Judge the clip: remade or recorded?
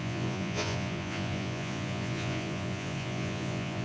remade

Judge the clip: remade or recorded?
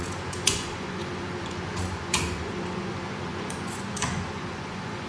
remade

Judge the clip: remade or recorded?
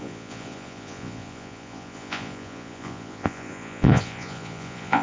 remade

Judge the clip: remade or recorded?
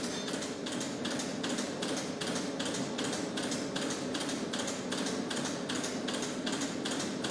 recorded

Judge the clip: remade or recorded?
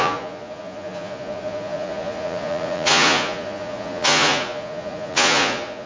remade